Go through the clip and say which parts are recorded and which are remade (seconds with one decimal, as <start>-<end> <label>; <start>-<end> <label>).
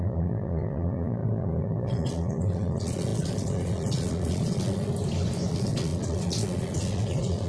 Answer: 0.0-4.9 remade; 4.9-5.5 recorded; 5.5-7.5 remade